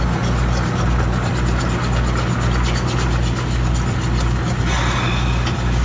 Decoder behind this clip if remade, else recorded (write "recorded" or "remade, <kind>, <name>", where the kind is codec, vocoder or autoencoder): recorded